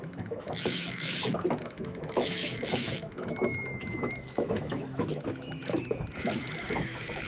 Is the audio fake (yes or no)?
yes